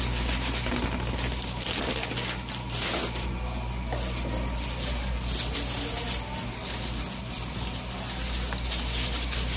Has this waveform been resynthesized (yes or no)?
no